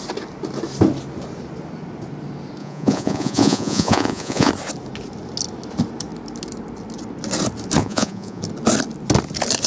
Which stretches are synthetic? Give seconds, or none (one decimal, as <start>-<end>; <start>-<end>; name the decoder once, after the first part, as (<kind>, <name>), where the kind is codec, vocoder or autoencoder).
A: 2.6-4.5 (vocoder, Vocos); 7.8-8.4